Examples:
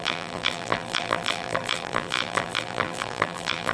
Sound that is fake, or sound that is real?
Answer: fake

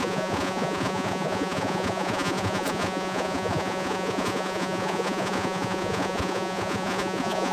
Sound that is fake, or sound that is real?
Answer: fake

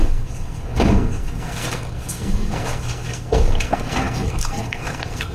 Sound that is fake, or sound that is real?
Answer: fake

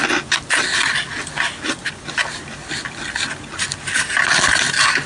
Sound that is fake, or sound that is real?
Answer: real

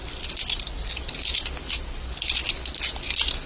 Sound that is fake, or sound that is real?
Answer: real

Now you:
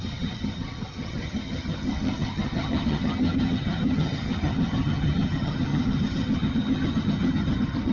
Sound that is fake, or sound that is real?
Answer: fake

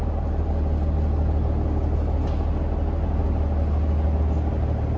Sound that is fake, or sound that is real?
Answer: real